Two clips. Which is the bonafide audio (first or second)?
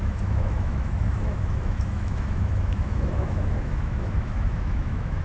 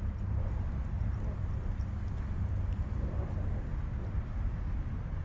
second